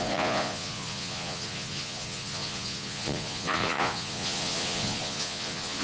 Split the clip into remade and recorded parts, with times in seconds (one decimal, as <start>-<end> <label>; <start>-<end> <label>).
0.0-5.8 remade